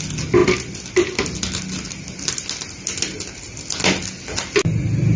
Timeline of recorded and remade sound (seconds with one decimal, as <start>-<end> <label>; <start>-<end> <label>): 0.0-5.2 recorded

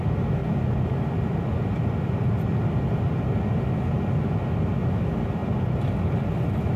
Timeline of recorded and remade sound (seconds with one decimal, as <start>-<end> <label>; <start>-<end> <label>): 0.0-6.8 recorded

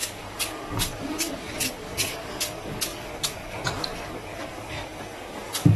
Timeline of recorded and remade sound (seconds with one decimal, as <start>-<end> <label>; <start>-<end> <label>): 0.0-5.8 remade

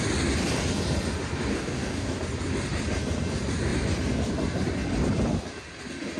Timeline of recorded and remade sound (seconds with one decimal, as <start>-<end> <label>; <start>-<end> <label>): 0.0-1.5 recorded; 1.5-2.2 remade; 2.2-6.2 recorded

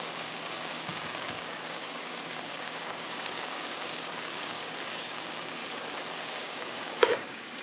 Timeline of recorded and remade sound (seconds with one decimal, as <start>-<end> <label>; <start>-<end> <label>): 0.0-5.6 remade; 5.6-6.2 recorded; 6.2-7.6 remade

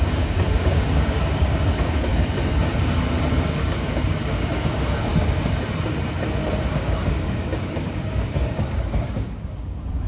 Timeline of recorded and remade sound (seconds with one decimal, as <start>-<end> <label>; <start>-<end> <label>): 0.0-2.1 remade; 2.1-3.3 recorded; 3.3-5.1 remade; 5.1-6.6 recorded; 6.6-10.1 remade